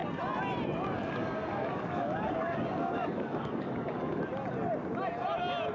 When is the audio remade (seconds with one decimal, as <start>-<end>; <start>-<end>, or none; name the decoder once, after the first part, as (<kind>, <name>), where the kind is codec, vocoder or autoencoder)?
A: 1.0-4.2 (codec, DAC)